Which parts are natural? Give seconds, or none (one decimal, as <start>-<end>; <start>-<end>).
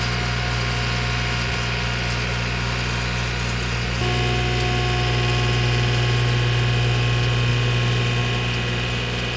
0.0-9.4